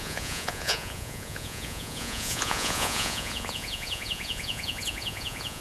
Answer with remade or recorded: remade